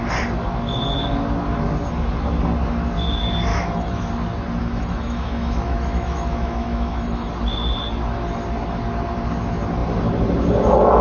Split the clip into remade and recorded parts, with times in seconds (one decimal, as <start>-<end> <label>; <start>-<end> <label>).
0.0-3.5 recorded; 3.5-4.1 remade; 4.1-4.6 recorded; 4.6-7.3 remade; 7.3-11.0 recorded